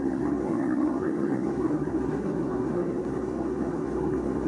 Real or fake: fake